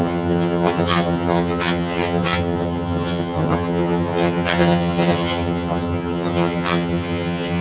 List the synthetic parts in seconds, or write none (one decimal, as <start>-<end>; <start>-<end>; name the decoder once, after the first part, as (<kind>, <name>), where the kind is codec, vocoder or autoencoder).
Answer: 0.0-7.6 (vocoder, HiFi-GAN)